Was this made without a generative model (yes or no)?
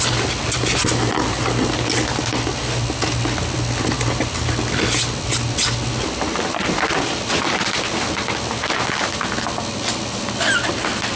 yes